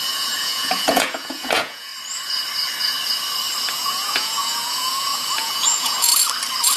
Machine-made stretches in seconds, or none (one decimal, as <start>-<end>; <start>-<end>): 0.0-1.9; 3.7-6.1